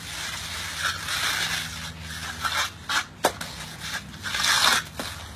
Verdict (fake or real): real